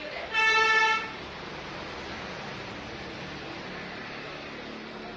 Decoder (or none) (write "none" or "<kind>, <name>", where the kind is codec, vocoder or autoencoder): none